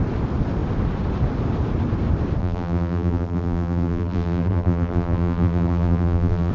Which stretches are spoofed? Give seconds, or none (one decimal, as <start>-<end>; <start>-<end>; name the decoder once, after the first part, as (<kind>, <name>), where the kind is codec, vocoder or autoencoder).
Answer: 2.4-6.5 (vocoder, BigVGAN v2)